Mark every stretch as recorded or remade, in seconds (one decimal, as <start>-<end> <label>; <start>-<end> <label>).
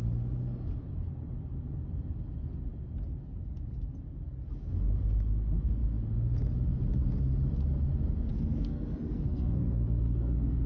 0.0-8.3 recorded; 8.3-10.7 remade